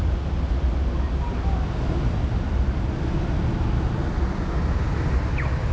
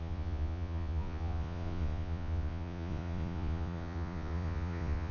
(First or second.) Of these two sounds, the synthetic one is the second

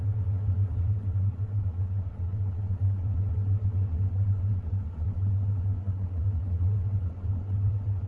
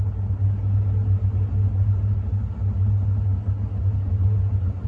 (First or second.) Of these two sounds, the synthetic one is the first